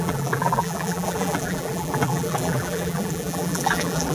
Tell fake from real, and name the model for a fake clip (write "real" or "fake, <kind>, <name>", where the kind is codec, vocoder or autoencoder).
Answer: fake, vocoder, BigVGAN v2